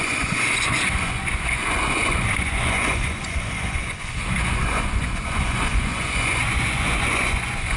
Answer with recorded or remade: remade